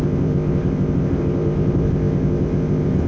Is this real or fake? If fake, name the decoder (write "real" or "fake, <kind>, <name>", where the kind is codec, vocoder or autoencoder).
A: fake, codec, ZipCodec